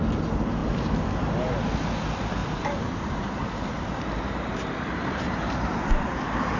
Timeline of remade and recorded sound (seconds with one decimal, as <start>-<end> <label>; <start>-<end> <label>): 0.0-2.4 recorded; 2.4-6.6 remade